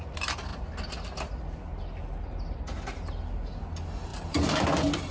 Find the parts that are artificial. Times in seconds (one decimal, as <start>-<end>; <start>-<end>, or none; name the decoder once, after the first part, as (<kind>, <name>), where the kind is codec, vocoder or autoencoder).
none